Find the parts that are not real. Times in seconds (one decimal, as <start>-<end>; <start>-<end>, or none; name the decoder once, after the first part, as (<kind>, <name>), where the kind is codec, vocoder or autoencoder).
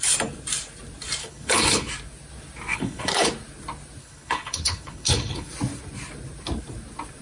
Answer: 1.2-1.9 (codec, HILCodec); 2.7-3.3; 4.0-5.5